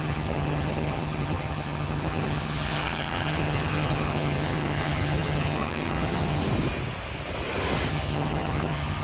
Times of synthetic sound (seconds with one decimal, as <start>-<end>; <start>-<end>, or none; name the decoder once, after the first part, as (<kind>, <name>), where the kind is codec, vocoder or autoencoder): 0.0-6.4 (vocoder, HiFi-GAN); 7.9-9.0